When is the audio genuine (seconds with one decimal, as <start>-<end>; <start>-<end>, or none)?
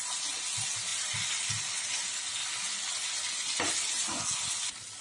0.0-5.0